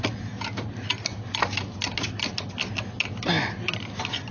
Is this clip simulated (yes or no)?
no